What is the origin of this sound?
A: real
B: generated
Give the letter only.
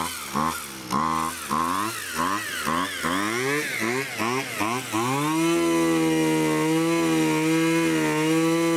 A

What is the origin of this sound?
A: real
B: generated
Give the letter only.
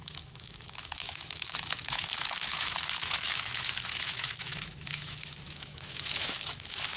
B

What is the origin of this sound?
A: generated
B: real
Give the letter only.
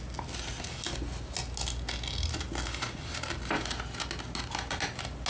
B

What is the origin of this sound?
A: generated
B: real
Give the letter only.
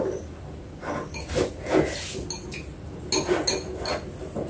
B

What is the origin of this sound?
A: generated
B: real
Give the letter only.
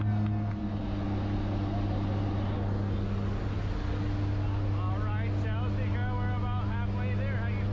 B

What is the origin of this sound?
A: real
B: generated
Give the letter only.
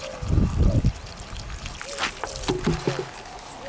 A